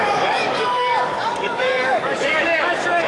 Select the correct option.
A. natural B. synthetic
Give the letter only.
B